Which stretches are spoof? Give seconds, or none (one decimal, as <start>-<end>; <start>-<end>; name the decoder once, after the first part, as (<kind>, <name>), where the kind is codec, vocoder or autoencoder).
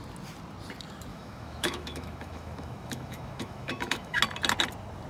1.1-4.2 (autoencoder, DAC-VAE)